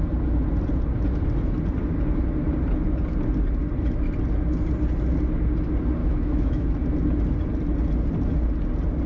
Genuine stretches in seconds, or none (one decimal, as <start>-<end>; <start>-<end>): 0.0-6.0; 6.7-9.1